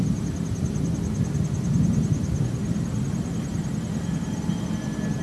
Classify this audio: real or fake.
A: real